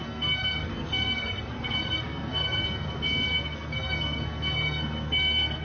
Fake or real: fake